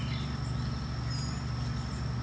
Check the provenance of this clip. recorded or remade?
recorded